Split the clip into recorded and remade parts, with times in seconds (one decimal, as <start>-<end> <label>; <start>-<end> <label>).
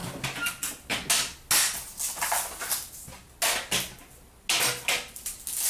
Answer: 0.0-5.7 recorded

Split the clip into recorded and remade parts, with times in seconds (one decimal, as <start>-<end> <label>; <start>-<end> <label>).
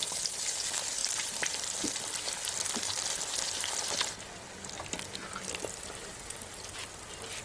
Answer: 0.0-7.4 recorded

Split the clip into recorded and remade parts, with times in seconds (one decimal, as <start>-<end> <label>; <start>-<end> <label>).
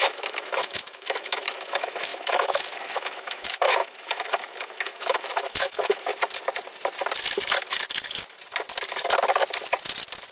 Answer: 0.0-6.1 remade; 6.1-10.3 recorded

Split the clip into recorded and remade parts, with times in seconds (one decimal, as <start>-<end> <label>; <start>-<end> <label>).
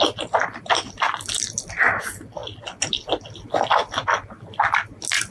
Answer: 0.0-5.3 recorded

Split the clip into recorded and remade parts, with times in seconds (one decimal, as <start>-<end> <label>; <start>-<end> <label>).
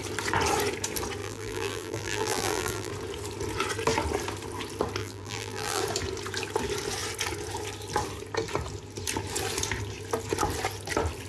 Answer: 0.0-1.2 recorded; 1.2-2.9 remade; 2.9-5.0 recorded; 5.0-5.8 remade; 5.8-11.3 recorded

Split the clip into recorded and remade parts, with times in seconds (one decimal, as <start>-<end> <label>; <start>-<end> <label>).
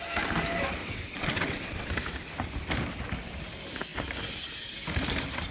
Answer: 0.0-0.8 recorded; 0.8-1.9 remade; 1.9-5.5 recorded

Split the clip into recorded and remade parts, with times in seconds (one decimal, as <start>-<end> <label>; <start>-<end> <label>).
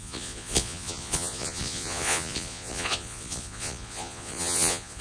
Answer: 0.0-5.0 remade